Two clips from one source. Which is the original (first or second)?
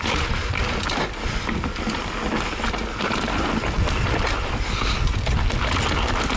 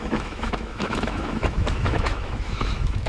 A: first